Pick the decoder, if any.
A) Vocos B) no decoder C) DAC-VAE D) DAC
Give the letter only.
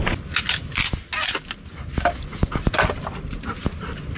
B